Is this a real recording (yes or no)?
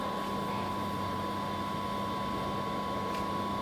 yes